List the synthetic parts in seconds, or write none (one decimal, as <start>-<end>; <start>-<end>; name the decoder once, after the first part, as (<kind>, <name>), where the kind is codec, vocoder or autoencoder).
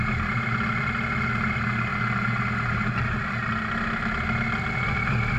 none